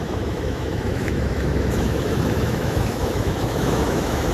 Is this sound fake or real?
fake